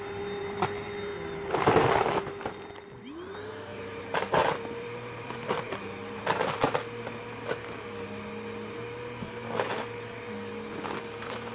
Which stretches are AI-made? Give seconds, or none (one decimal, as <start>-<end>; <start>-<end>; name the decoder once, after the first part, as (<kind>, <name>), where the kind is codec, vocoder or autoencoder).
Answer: 3.7-6.2 (vocoder, BigVGAN v2)